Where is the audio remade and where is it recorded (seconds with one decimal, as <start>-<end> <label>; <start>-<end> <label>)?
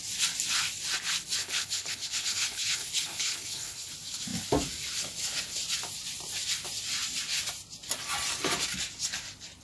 0.0-1.4 recorded; 1.4-3.9 remade; 3.9-9.6 recorded